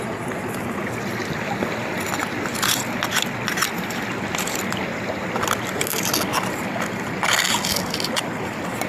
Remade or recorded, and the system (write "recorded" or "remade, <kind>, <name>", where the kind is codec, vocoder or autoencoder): recorded